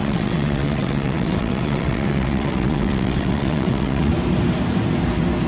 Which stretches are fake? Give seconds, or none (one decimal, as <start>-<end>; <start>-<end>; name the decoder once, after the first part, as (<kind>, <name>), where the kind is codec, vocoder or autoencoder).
0.0-4.1 (vocoder, WaveNeXt)